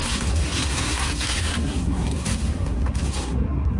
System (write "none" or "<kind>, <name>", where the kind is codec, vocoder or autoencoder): codec, SNAC